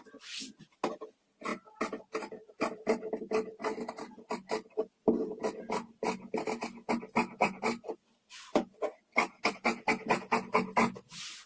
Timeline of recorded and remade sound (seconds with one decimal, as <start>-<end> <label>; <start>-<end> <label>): 0.0-11.5 recorded